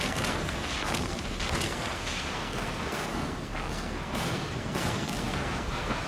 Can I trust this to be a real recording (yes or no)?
no